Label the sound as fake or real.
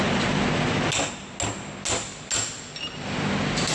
real